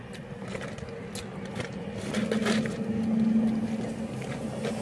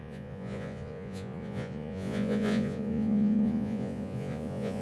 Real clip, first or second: first